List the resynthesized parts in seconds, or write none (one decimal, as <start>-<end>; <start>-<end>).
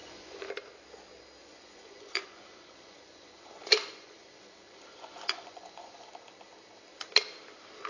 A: 0.0-0.5; 1.4-6.1